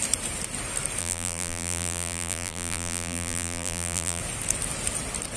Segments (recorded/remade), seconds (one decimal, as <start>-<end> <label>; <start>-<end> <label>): 0.0-1.0 recorded; 1.0-4.2 remade; 4.2-5.4 recorded